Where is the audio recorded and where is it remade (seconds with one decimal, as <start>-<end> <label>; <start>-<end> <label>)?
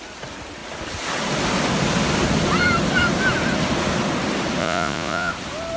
0.0-4.6 recorded; 4.6-5.3 remade; 5.3-5.8 recorded